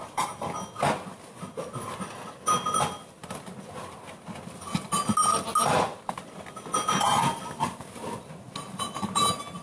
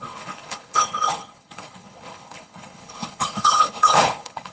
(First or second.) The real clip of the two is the first